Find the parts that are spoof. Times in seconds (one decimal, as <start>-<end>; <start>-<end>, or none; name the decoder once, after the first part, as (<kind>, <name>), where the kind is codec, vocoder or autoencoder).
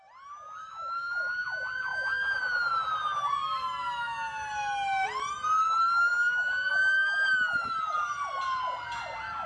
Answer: 0.6-1.3 (autoencoder, DAC-VAE)